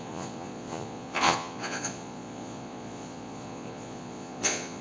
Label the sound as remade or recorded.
remade